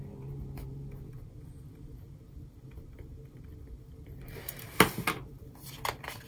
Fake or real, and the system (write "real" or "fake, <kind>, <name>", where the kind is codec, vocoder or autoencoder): real